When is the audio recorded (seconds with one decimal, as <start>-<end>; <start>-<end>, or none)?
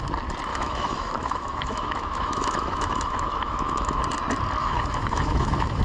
0.0-0.5; 4.0-4.6